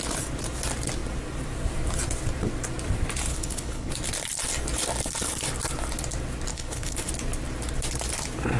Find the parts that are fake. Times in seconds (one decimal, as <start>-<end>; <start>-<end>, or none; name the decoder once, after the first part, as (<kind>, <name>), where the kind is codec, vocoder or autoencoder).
3.3-3.9 (codec, HILCodec); 6.5-7.1